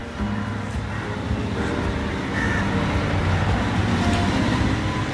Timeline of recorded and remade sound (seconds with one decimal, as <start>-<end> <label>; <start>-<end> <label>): 0.0-3.2 recorded; 3.2-3.8 remade; 3.8-5.1 recorded